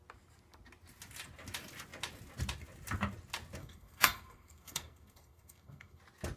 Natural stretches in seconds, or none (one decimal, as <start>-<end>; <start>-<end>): 0.0-3.6; 6.0-6.4